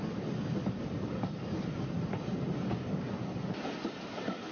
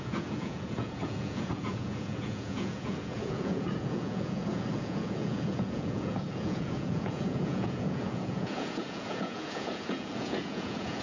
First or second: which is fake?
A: second